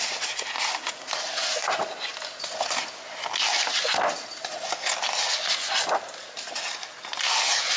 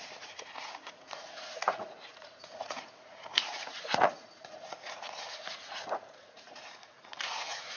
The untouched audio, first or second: first